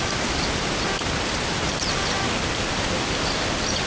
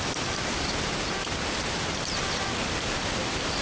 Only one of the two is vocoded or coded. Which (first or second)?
second